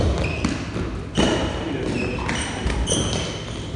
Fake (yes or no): no